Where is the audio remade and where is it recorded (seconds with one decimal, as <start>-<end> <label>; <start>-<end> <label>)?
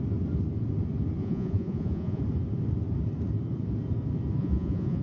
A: 0.0-1.2 recorded; 1.2-2.2 remade; 2.2-4.4 recorded; 4.4-5.0 remade